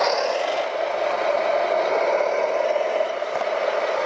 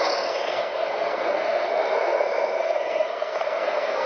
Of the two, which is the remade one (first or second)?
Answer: second